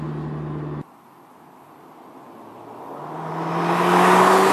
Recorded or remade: recorded